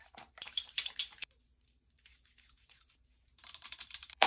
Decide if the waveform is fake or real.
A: fake